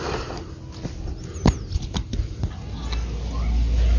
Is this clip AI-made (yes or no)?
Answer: no